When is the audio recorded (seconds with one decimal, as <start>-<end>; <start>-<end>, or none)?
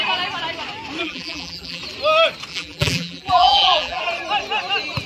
0.0-1.0; 1.8-2.5; 4.0-5.1